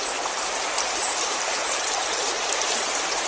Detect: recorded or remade remade